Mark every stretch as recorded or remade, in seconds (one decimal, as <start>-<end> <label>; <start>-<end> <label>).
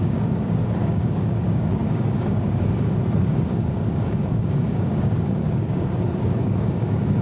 0.0-7.2 remade